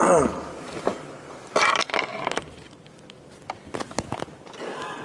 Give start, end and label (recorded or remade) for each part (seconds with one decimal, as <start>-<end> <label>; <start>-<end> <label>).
0.0-5.0 recorded